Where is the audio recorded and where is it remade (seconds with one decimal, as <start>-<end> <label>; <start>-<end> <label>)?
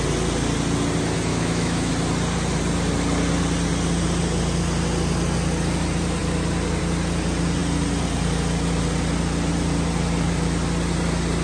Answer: 0.0-1.3 recorded; 1.3-1.9 remade; 1.9-11.4 recorded